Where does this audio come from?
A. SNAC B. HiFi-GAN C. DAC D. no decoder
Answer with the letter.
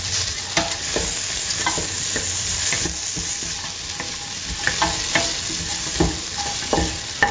D